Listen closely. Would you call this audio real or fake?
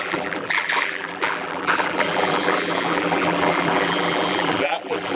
fake